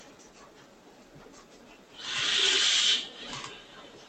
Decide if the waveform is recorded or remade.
recorded